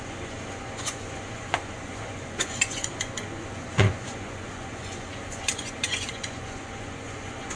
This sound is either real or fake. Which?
fake